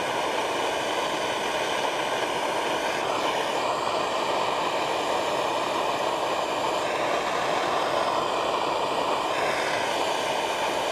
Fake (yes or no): no